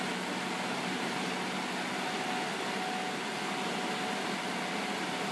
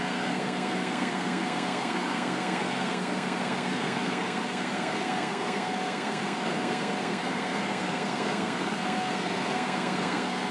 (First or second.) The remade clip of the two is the second